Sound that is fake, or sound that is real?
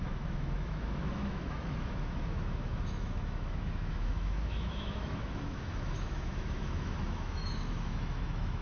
fake